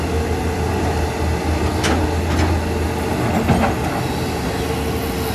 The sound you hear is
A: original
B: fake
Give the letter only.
A